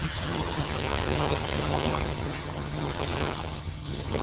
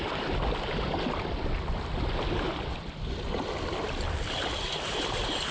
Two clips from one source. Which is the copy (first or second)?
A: first